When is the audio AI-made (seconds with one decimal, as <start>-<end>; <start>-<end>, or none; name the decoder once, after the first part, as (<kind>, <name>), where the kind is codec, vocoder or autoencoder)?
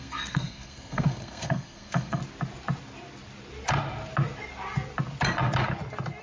0.0-2.2 (codec, SNAC)